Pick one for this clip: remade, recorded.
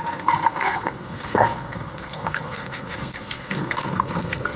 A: remade